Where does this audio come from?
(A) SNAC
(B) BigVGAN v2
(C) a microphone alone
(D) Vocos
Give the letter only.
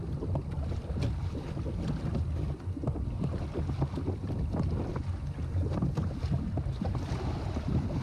C